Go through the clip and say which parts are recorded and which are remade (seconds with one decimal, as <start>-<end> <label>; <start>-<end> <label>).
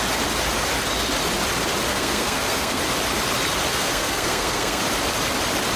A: 0.0-1.9 recorded; 1.9-2.8 remade; 2.8-3.7 recorded; 3.7-4.8 remade; 4.8-5.8 recorded